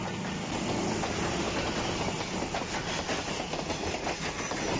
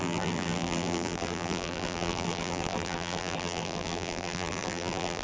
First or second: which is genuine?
first